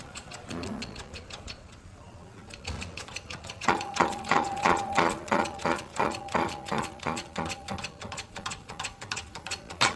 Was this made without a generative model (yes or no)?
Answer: no